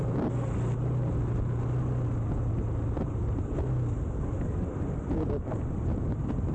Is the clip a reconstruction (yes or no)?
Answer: no